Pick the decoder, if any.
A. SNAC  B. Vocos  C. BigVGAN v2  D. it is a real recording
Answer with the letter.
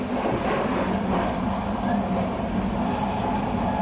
D